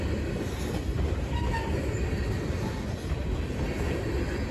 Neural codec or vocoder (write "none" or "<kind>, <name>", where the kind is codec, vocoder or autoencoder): none